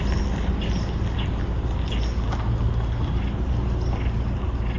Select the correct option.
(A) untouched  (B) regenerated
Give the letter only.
A